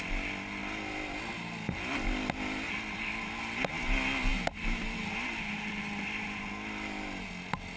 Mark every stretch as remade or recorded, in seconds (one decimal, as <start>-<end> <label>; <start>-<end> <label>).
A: 0.0-7.8 recorded